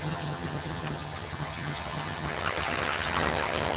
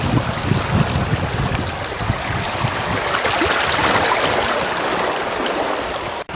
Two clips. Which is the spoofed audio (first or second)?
first